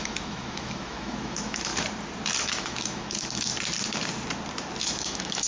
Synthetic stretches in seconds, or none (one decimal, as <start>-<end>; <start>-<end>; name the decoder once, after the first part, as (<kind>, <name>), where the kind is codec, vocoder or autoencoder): 0.0-1.7 (autoencoder, DAC-VAE); 2.4-3.5; 4.8-5.5